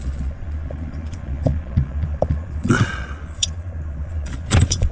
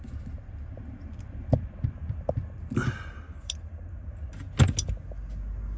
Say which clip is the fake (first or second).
first